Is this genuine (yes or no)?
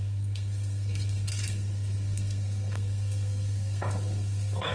no